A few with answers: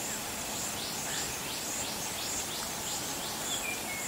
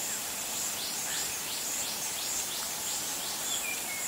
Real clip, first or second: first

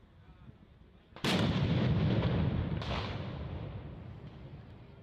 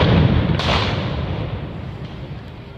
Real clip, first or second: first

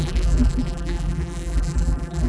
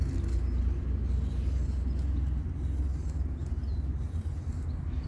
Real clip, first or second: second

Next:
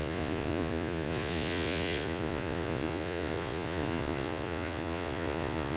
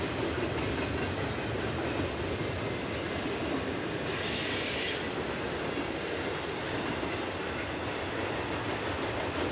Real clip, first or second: second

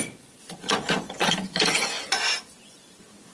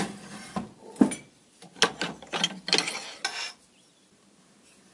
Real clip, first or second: second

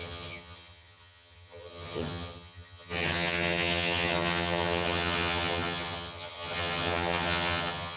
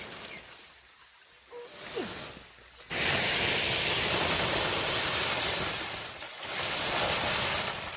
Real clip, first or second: second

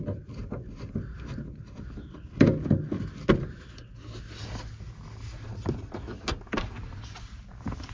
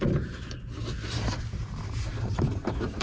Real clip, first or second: first